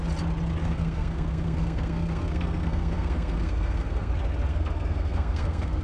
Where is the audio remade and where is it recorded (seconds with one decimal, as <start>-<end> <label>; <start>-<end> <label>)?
0.0-0.6 recorded; 0.6-4.1 remade; 4.1-4.5 recorded; 4.5-5.8 remade